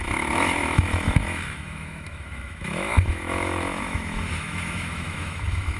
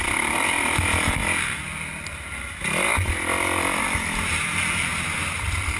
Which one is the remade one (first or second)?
first